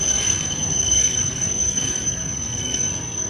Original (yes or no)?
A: no